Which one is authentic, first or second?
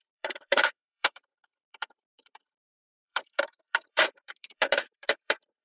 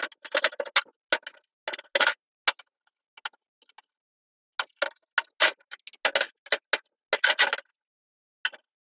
second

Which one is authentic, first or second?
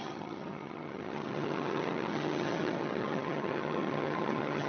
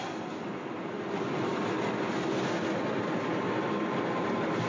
second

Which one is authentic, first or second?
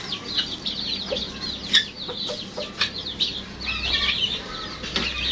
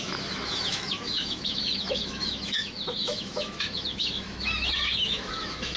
first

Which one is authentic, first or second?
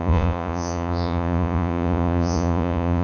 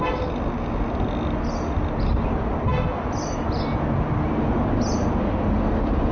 second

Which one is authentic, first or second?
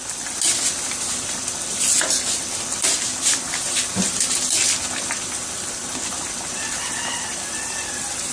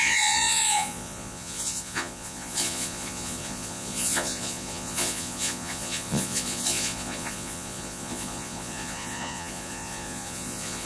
first